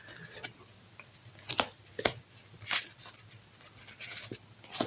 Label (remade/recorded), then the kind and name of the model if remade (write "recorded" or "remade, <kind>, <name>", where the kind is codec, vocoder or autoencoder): recorded